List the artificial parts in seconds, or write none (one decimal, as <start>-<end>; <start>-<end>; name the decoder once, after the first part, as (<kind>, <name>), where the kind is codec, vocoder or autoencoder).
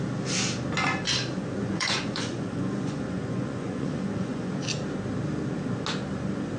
1.4-4.5 (vocoder, Vocos)